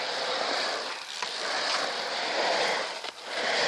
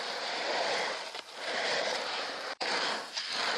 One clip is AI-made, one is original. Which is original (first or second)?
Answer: first